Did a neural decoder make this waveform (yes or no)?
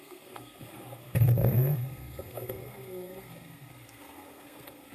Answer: yes